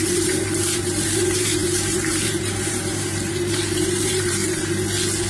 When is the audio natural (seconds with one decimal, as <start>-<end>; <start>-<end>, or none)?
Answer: 4.4-5.3